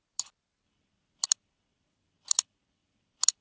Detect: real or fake fake